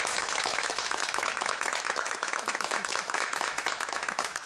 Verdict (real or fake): fake